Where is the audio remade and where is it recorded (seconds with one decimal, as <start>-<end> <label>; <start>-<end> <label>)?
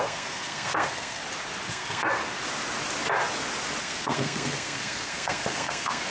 0.0-1.2 remade; 1.2-1.7 recorded; 1.7-2.2 remade; 2.2-3.8 recorded; 3.8-6.1 remade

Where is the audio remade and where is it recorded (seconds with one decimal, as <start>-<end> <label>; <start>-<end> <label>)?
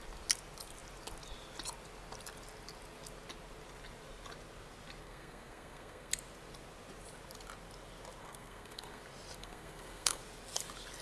0.0-5.0 recorded; 5.0-6.1 remade; 6.1-8.2 recorded; 8.2-9.0 remade; 9.0-9.4 recorded; 9.4-10.2 remade; 10.2-11.0 recorded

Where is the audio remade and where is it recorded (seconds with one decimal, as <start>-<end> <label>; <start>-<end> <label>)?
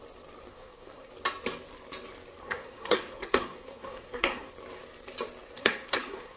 0.0-0.5 recorded; 0.5-1.1 remade; 1.1-2.4 recorded; 2.4-4.5 remade; 4.5-5.6 recorded; 5.6-6.4 remade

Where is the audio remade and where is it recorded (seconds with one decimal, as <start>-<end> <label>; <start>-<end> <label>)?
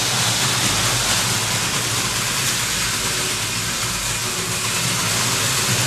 0.0-5.9 recorded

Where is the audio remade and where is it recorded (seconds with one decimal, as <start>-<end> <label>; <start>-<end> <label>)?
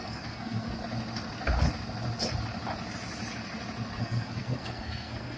0.0-0.8 remade; 0.8-4.0 recorded; 4.0-5.4 remade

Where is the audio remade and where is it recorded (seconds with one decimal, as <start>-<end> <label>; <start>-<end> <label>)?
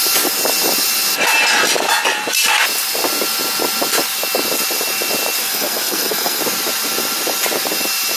0.0-5.4 recorded; 5.4-6.4 remade; 6.4-8.2 recorded